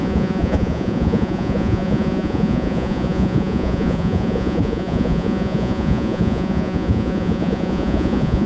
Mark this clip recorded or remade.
remade